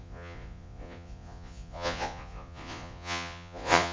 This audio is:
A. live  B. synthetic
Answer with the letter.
B